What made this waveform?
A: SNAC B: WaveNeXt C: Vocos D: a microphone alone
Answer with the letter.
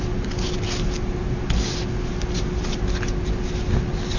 D